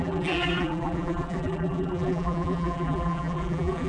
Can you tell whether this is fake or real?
fake